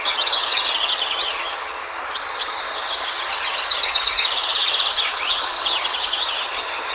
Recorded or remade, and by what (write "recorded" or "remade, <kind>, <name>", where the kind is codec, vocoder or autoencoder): remade, vocoder, HiFi-GAN